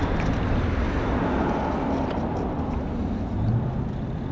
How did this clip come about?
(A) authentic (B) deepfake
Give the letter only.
A